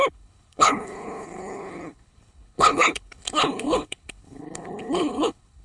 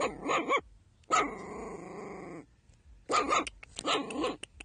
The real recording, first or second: second